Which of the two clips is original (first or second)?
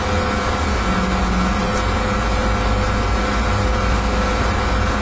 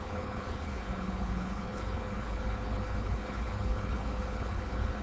first